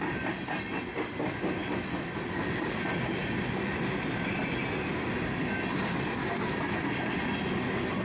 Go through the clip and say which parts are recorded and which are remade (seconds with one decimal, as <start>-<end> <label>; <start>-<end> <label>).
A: 0.0-8.0 recorded